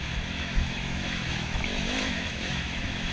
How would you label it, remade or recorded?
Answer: remade